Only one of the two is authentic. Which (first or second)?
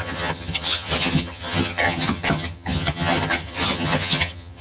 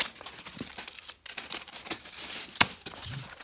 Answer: second